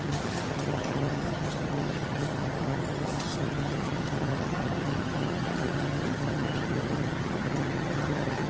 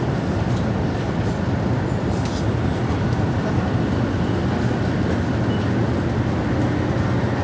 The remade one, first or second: first